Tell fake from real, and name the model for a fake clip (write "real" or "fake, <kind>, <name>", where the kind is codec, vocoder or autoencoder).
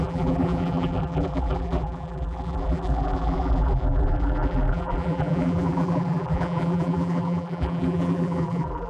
fake, vocoder, BigVGAN v2